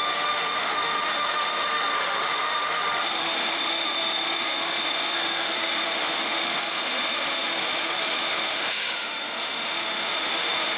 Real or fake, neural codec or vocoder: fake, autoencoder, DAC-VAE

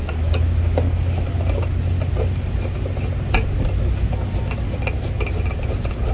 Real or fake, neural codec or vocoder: real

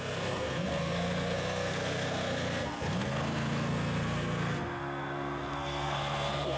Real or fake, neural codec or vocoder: fake, codec, SNAC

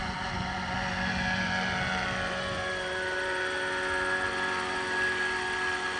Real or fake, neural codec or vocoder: real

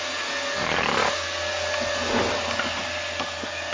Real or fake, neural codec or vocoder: real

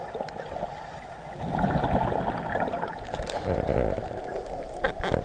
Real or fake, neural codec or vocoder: real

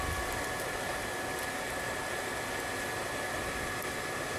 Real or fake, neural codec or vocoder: real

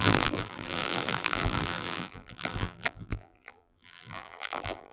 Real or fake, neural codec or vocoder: fake, vocoder, BigVGAN v2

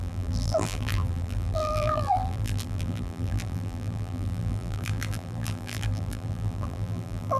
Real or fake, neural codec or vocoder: fake, vocoder, BigVGAN v2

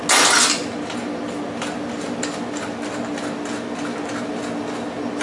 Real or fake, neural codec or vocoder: real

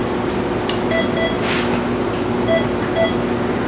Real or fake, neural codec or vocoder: real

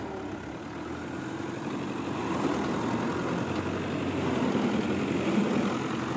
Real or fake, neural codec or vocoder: real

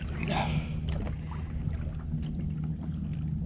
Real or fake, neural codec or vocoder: real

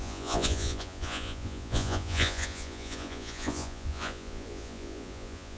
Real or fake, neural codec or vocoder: fake, vocoder, Vocos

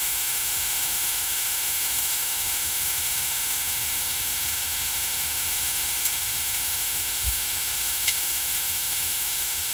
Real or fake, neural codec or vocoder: fake, autoencoder, DAC-VAE